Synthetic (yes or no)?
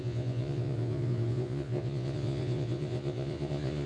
yes